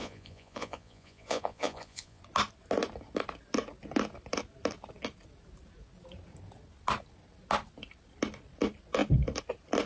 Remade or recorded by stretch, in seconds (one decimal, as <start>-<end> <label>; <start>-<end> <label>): 0.0-2.2 remade; 2.2-9.9 recorded

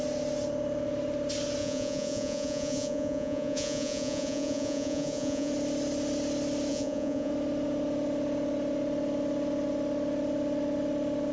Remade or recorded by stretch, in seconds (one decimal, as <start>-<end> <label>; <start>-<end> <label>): 0.0-1.6 recorded; 1.6-5.5 remade; 5.5-6.7 recorded; 6.7-7.3 remade; 7.3-11.3 recorded

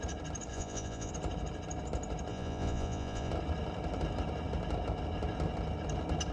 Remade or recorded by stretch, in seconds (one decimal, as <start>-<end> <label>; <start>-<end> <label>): 0.0-0.5 recorded; 0.5-1.1 remade; 1.1-2.3 recorded; 2.3-3.3 remade; 3.3-6.3 recorded

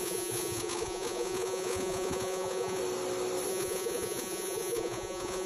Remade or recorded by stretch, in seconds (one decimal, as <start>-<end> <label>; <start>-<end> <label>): 0.0-2.8 remade; 2.8-3.5 recorded; 3.5-5.5 remade

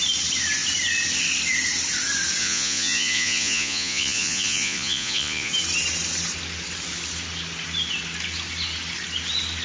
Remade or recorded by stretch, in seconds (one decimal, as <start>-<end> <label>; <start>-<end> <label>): 0.0-2.4 recorded; 2.4-5.5 remade; 5.5-9.6 recorded